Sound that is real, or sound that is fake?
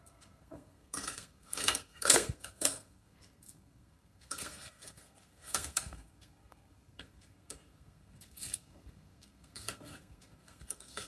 fake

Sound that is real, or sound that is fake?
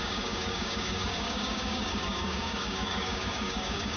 fake